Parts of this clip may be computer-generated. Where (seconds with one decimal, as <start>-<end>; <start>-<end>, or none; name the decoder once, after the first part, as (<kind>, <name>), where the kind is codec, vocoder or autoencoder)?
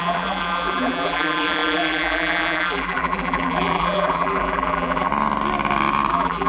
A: 0.0-5.1 (vocoder, BigVGAN v2); 6.1-6.5